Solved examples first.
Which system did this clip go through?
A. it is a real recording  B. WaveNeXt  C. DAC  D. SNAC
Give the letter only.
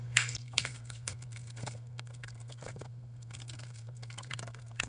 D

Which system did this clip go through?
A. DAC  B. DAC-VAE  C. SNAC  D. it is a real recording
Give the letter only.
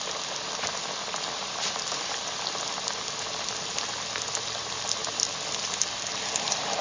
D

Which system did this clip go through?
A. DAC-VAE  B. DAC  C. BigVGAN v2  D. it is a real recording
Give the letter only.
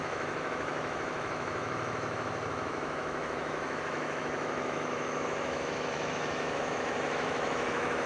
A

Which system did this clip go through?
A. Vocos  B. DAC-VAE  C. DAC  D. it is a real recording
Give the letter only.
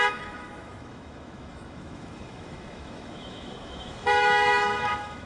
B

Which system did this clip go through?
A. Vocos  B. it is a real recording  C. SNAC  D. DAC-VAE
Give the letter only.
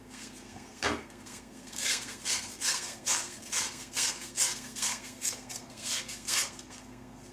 C